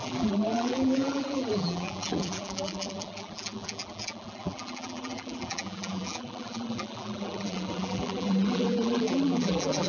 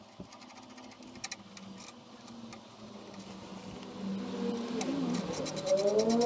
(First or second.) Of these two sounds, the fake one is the first